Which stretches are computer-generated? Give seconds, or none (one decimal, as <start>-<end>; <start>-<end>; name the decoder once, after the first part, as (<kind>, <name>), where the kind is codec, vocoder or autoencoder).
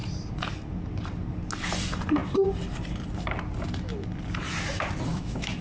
5.1-5.6 (autoencoder, DAC-VAE)